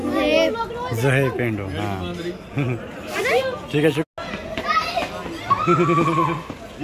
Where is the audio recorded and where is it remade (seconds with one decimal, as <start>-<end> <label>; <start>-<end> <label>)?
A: 0.0-6.8 recorded